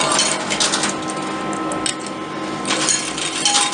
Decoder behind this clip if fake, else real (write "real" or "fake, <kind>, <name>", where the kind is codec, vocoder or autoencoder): real